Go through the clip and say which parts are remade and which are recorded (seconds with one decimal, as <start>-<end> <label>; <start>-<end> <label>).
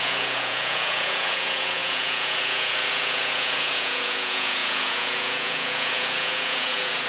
0.0-7.1 remade